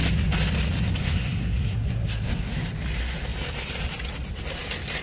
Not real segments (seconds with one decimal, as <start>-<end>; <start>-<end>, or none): 1.0-2.6